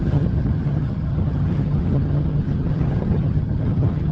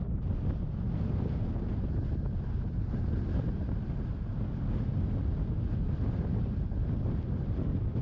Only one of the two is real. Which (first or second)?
second